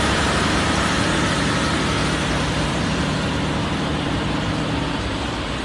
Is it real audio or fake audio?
fake